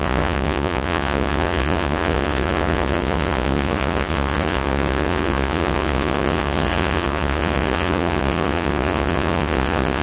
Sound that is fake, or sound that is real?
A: fake